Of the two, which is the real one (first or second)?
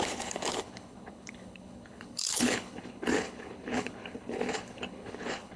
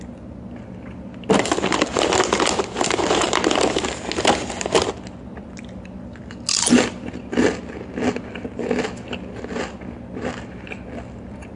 second